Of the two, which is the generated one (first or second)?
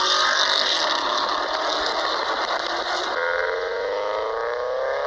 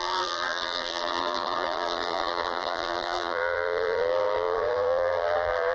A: second